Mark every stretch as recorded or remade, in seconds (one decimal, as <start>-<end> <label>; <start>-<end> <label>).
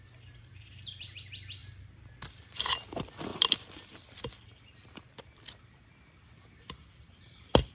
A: 0.0-7.7 remade